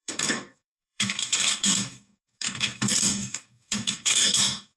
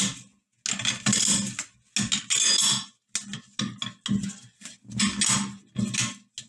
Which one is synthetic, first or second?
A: first